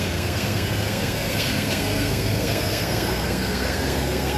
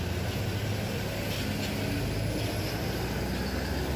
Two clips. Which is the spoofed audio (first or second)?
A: first